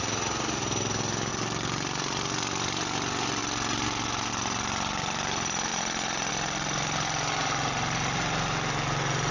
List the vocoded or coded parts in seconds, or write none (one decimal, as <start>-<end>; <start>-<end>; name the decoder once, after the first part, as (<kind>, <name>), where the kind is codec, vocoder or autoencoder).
none